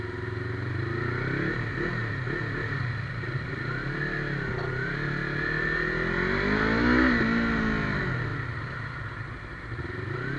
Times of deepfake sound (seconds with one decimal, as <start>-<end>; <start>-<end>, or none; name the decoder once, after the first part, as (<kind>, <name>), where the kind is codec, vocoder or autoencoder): none